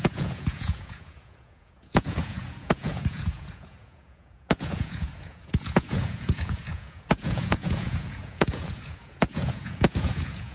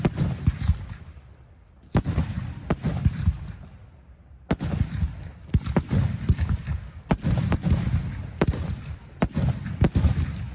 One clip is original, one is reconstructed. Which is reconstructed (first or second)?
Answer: first